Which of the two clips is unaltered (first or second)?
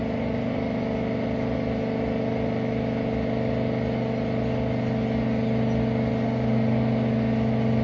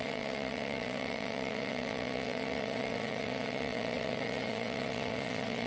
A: first